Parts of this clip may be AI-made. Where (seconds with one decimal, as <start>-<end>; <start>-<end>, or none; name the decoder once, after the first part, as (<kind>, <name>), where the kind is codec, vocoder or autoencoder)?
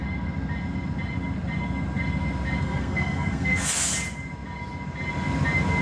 2.6-3.8 (codec, SNAC)